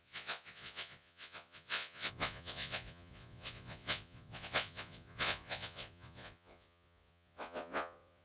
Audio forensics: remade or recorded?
remade